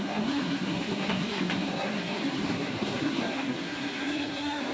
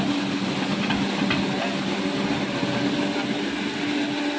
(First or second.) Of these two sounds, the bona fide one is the second